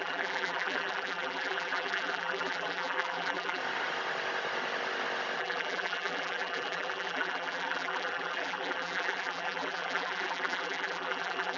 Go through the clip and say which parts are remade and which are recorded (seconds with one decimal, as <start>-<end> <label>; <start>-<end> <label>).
0.0-3.6 remade; 3.6-5.4 recorded; 5.4-11.6 remade